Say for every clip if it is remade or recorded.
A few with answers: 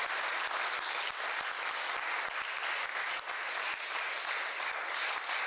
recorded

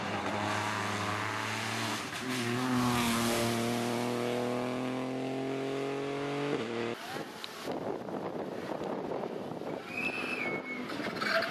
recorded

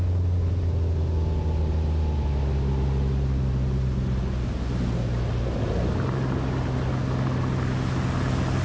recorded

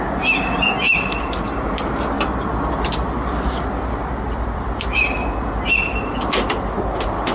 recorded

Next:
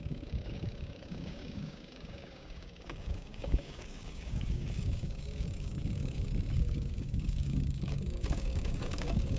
remade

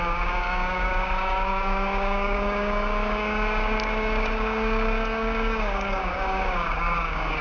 remade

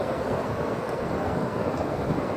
remade